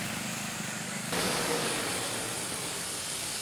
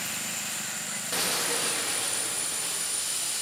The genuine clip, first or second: second